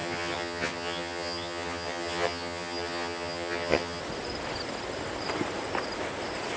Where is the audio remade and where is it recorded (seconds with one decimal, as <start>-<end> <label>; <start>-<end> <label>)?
0.0-4.0 remade; 4.0-6.6 recorded

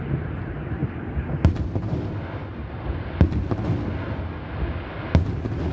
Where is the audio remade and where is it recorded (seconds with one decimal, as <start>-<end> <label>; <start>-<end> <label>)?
0.0-5.7 recorded

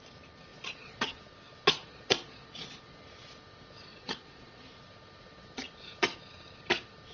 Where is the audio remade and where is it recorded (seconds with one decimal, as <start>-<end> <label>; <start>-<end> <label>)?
0.0-0.5 recorded; 0.5-1.2 remade; 1.2-1.8 recorded; 1.8-2.8 remade; 2.8-3.9 recorded; 3.9-4.8 remade; 4.8-7.1 recorded

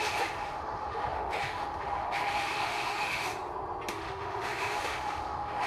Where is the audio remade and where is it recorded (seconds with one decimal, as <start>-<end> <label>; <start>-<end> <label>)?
0.0-3.3 remade; 3.3-3.9 recorded; 3.9-5.7 remade